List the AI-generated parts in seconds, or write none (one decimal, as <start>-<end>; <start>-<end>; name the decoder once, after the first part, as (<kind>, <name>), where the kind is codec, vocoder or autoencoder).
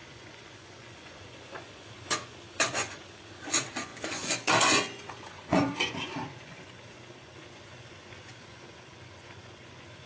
0.0-10.1 (vocoder, Vocos)